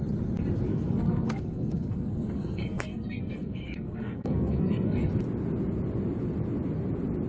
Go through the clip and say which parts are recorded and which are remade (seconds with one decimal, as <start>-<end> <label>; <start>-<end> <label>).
0.0-0.7 recorded; 0.7-5.1 remade; 5.1-7.3 recorded